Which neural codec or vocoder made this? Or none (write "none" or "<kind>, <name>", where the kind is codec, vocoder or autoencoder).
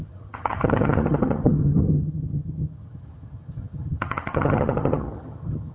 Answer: vocoder, HiFi-GAN